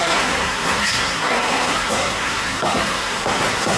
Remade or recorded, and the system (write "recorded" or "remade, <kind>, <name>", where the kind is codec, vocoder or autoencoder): remade, codec, SNAC